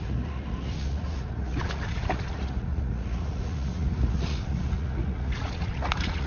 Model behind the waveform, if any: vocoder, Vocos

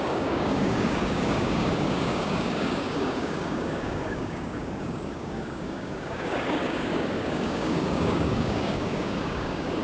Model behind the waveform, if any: codec, DAC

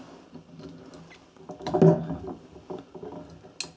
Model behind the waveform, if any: none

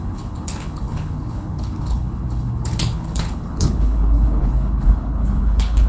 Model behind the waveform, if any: codec, HILCodec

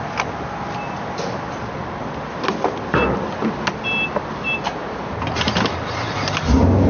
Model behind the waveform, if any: none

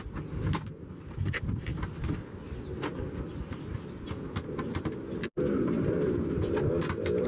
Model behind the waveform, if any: none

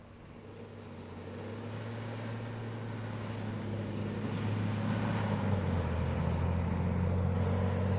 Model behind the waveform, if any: none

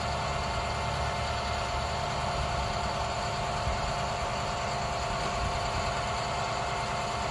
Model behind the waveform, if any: none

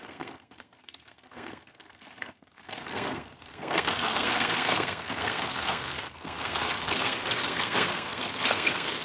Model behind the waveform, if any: codec, SNAC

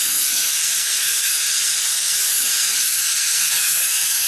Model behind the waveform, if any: codec, SNAC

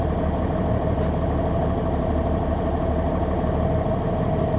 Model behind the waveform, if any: none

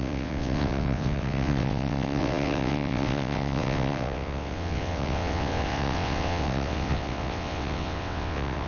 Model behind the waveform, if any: vocoder, WaveNeXt